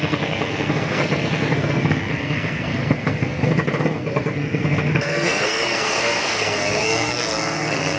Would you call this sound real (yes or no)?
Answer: no